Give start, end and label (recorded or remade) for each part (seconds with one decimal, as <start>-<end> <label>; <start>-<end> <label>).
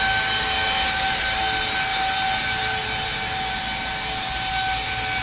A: 0.0-5.2 recorded